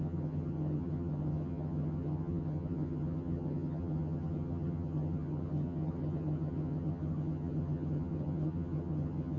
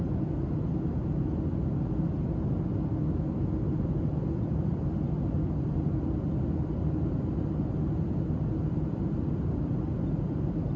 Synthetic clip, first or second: first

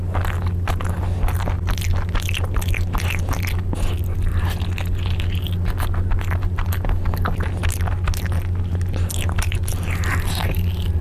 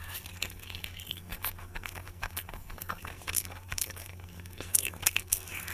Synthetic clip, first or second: second